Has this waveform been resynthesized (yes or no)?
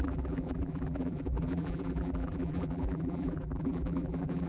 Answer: yes